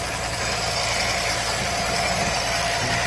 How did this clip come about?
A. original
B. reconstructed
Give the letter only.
B